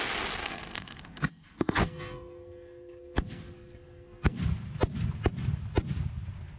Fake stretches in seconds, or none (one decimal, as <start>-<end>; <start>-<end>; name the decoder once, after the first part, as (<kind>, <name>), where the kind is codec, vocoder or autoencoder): 0.4-4.4 (codec, SNAC)